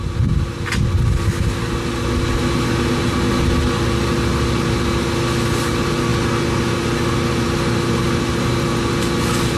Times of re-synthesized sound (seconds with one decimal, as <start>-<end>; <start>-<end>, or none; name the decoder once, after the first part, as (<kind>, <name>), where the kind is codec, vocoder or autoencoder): none